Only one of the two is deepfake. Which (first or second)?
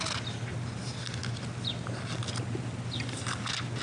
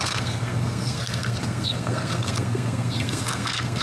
second